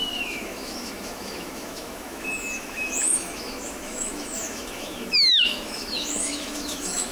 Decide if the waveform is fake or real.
fake